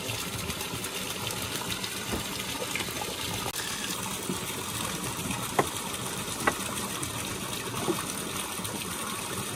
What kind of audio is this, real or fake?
real